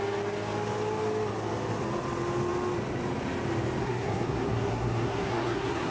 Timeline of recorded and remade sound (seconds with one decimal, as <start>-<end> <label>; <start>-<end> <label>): 0.0-3.8 recorded; 3.8-5.9 remade